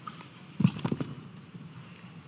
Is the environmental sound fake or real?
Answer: real